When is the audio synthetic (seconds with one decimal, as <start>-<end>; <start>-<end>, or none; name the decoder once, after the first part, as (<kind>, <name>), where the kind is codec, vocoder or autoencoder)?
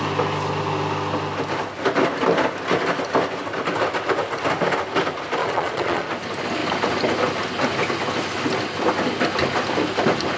5.4-6.1 (vocoder, Vocos)